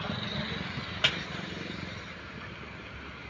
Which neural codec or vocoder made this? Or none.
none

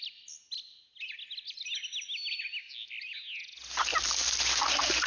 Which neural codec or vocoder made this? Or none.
none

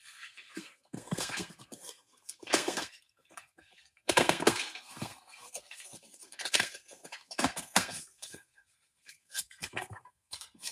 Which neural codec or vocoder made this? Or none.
codec, SNAC